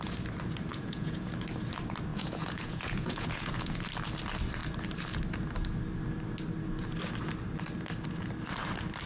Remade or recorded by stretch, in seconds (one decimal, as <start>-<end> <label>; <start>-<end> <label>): 0.0-0.7 recorded; 0.7-1.3 remade; 1.3-2.1 recorded; 2.1-3.8 remade; 3.8-9.1 recorded